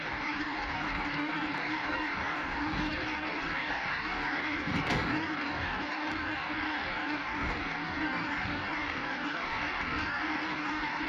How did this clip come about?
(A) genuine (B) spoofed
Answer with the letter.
B